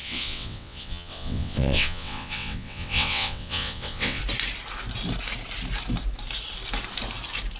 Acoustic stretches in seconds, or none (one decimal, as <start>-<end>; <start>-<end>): 4.2-7.6